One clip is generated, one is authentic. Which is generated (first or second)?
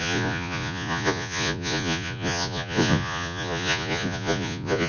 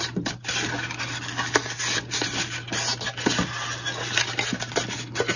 first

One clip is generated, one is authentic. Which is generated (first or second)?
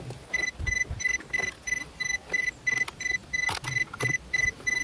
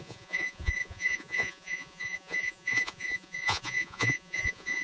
second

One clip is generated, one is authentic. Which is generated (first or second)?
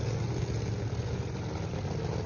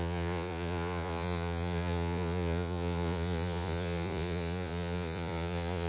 second